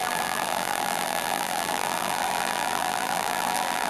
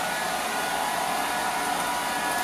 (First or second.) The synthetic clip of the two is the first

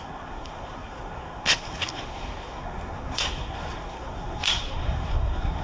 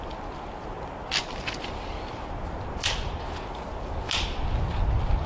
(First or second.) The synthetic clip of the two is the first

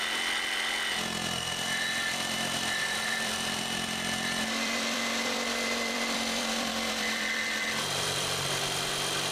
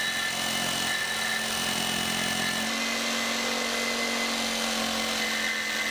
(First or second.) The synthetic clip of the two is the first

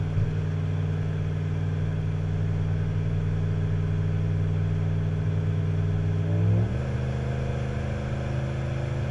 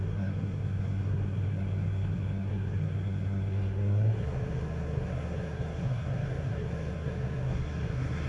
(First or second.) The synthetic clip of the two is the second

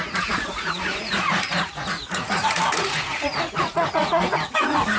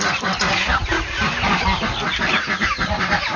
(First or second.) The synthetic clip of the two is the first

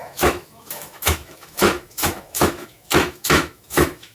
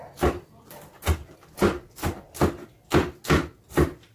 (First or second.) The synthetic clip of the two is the first